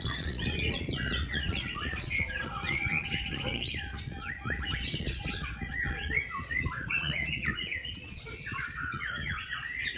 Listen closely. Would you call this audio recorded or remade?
remade